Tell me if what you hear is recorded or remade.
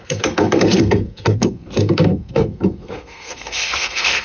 remade